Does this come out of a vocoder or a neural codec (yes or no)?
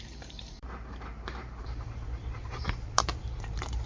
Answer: yes